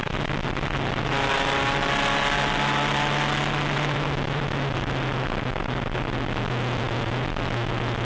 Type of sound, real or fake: real